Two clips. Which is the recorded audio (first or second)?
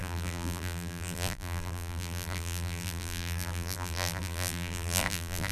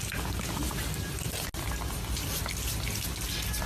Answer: second